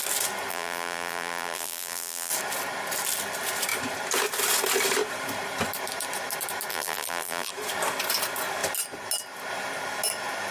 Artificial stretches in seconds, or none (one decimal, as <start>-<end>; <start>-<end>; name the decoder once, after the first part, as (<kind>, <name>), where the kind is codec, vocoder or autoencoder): 0.5-2.3 (vocoder, BigVGAN v2); 6.7-7.5